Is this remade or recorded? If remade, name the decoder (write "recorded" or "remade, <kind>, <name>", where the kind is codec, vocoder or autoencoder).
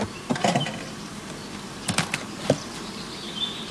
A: remade, vocoder, BigVGAN v2